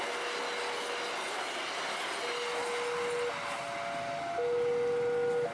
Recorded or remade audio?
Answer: recorded